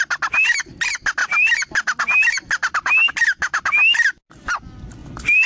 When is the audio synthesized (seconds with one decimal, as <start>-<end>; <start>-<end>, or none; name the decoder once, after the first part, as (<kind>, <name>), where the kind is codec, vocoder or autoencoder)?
1.2-3.4 (vocoder, BigVGAN v2); 5.0-5.5